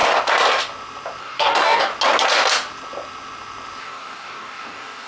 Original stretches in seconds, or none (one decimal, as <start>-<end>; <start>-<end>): 0.0-1.2; 1.9-3.8